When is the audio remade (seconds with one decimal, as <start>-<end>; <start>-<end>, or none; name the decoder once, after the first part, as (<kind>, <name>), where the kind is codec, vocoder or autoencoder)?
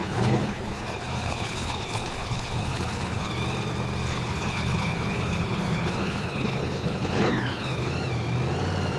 0.0-3.3 (codec, HILCodec); 4.1-7.9